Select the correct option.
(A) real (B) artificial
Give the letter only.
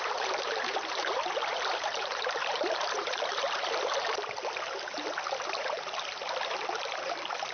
B